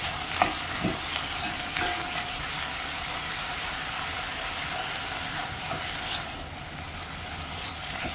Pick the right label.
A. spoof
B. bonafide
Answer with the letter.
B